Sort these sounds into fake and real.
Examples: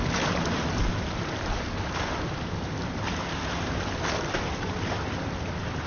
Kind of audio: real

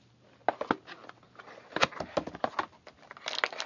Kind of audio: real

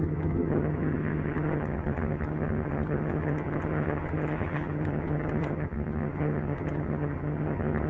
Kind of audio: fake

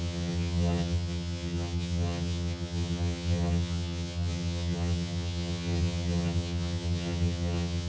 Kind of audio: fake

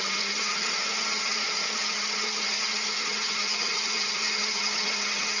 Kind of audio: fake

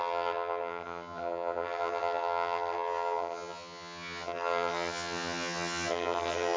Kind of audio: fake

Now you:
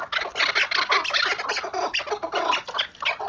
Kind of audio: real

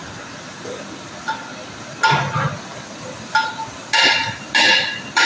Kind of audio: real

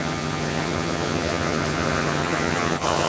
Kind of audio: fake